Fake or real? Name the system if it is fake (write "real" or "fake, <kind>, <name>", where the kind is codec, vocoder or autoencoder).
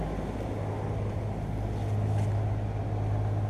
real